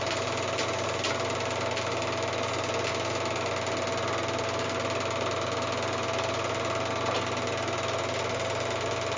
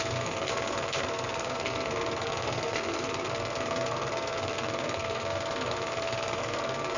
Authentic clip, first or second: first